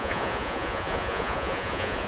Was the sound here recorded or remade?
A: remade